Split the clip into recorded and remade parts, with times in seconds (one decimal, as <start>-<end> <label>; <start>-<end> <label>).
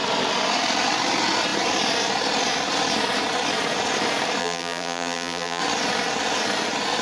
0.0-4.4 recorded; 4.4-5.6 remade; 5.6-7.0 recorded